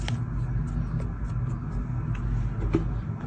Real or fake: real